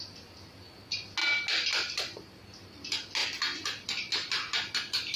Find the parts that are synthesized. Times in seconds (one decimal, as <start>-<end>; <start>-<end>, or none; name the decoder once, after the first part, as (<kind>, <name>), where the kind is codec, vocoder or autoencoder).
none